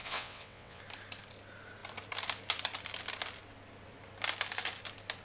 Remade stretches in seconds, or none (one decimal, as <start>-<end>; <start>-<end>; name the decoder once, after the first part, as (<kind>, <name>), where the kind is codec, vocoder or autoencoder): 0.0-0.8 (vocoder, WaveNeXt)